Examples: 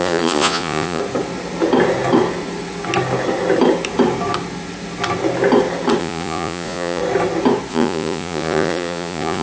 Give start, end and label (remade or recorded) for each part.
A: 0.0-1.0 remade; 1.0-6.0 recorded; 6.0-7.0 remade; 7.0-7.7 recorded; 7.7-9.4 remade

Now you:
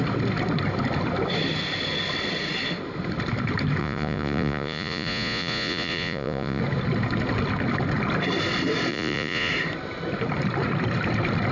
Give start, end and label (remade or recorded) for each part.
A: 0.0-3.8 recorded; 3.8-6.6 remade; 6.6-8.9 recorded; 8.9-9.5 remade; 9.5-11.5 recorded